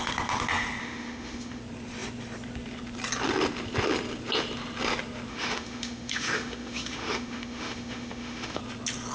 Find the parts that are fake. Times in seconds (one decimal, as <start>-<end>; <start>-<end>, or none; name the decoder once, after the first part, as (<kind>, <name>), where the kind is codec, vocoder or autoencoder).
0.8-1.6 (autoencoder, DAC-VAE); 5.3-8.6